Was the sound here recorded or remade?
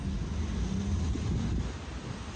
recorded